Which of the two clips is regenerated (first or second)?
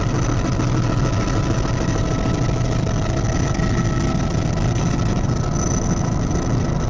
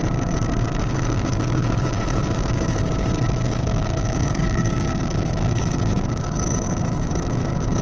second